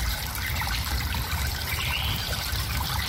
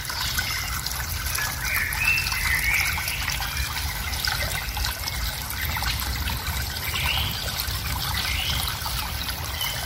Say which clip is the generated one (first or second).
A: first